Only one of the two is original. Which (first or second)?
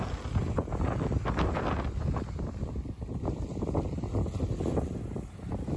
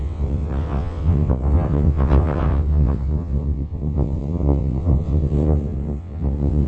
first